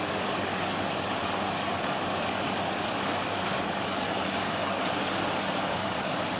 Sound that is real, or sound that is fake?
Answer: fake